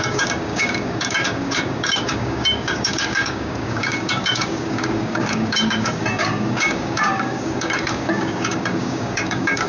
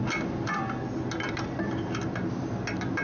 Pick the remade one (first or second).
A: first